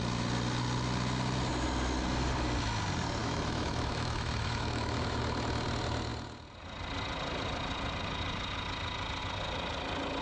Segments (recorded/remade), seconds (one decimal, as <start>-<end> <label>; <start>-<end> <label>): 0.0-3.2 recorded; 3.2-5.2 remade; 5.2-10.2 recorded

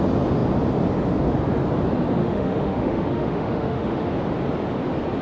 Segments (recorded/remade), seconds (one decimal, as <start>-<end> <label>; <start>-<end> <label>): 0.0-2.2 recorded; 2.2-4.1 remade; 4.1-5.2 recorded

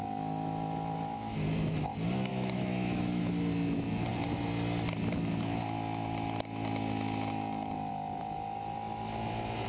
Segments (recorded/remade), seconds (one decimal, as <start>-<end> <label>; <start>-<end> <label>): 0.0-2.3 recorded; 2.3-3.2 remade; 3.2-9.7 recorded

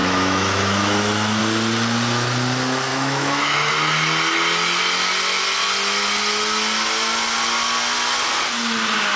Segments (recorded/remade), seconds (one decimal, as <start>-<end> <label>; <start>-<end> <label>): 0.0-1.4 remade; 1.4-2.9 recorded; 2.9-3.7 remade; 3.7-9.2 recorded

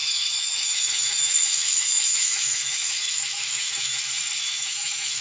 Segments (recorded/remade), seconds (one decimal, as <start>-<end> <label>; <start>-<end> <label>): 0.0-3.9 remade; 3.9-4.4 recorded; 4.4-5.2 remade

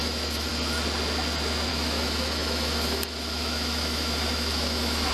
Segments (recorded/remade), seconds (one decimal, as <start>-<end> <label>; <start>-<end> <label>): 0.0-0.5 remade; 0.5-1.7 recorded; 1.7-5.1 remade